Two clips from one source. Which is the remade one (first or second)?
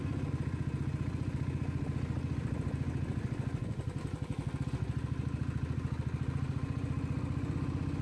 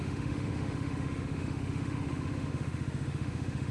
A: second